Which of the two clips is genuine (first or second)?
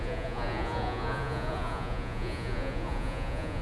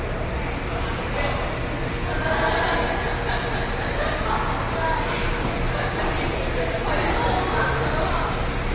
second